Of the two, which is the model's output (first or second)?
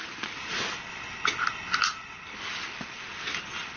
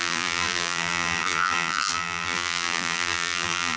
second